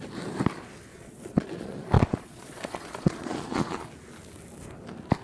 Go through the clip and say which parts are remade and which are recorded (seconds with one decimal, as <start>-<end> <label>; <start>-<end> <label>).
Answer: 0.0-0.9 recorded; 0.9-3.9 remade; 3.9-5.2 recorded